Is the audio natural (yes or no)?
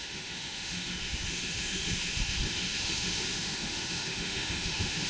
no